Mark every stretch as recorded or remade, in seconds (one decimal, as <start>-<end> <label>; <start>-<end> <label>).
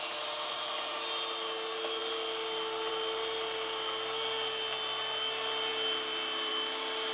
0.0-7.1 recorded